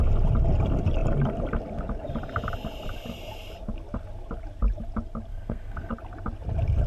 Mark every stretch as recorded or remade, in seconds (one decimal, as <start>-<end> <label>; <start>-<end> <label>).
0.0-5.3 recorded; 5.3-5.9 remade; 5.9-6.9 recorded